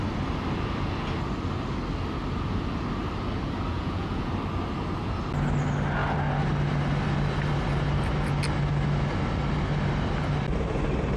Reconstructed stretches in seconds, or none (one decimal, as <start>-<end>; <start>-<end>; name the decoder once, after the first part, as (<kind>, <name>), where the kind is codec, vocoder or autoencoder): 3.7-4.3 (vocoder, Vocos)